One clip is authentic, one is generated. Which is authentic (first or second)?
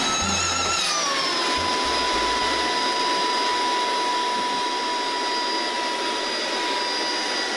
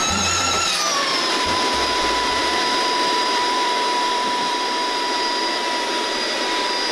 first